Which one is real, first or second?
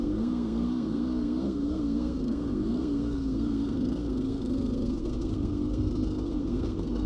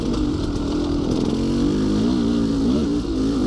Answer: second